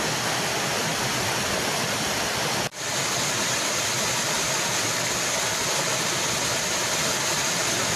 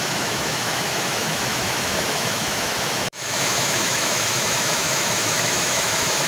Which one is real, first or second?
first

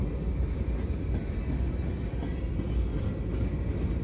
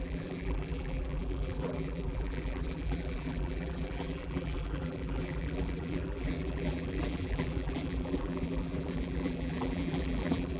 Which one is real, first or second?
first